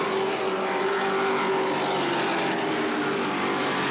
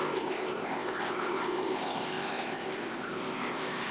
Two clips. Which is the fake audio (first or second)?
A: second